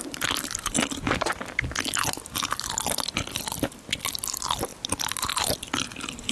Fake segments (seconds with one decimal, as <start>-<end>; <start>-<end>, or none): none